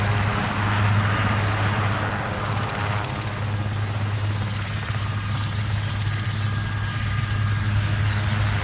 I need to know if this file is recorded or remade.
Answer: recorded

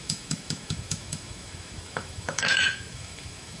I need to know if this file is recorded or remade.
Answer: remade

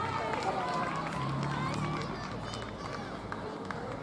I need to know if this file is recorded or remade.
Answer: recorded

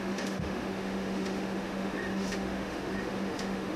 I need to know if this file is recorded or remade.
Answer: remade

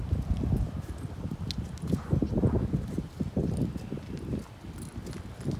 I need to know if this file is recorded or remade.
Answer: recorded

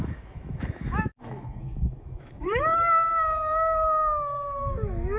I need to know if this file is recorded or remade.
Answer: remade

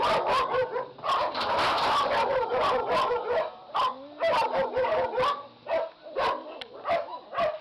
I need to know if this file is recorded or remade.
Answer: recorded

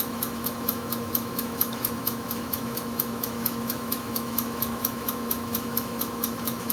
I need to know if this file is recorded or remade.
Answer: remade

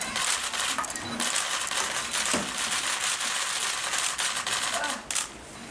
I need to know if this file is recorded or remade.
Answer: recorded